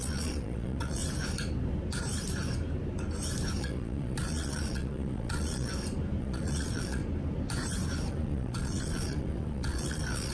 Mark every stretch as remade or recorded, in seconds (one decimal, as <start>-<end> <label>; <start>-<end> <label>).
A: 0.0-1.0 remade; 1.0-3.6 recorded; 3.6-5.7 remade; 5.7-6.2 recorded; 6.2-7.0 remade; 7.0-8.1 recorded; 8.1-10.3 remade